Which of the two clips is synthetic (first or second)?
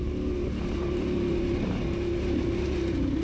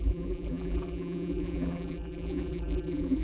second